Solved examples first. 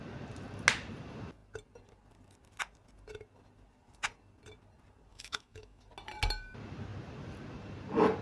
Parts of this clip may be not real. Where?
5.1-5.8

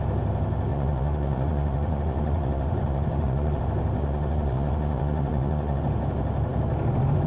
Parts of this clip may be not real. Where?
0.7-3.6; 4.0-5.8